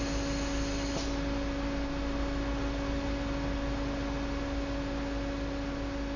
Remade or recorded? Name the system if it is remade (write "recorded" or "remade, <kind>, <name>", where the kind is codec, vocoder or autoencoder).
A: recorded